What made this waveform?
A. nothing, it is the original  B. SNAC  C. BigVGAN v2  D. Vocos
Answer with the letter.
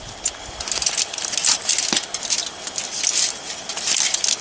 A